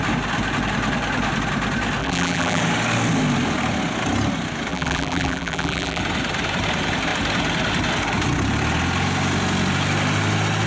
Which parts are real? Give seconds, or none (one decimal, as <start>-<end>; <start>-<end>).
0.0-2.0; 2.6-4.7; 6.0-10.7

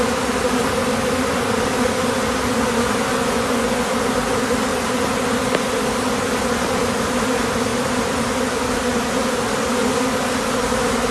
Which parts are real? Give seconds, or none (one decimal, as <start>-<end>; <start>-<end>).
0.0-3.1; 3.9-11.1

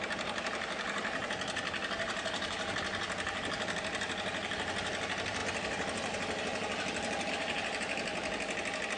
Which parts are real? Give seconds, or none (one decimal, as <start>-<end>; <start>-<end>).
5.4-7.3; 8.1-9.0

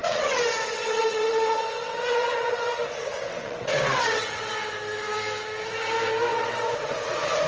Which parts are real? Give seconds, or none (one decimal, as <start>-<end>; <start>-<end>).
4.5-6.3; 7.0-7.5

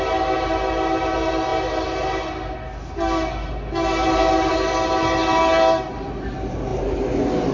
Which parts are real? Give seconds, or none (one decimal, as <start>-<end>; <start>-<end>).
0.0-7.5

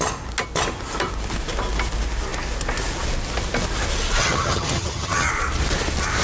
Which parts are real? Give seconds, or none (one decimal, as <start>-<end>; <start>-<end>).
0.0-4.2; 5.3-6.2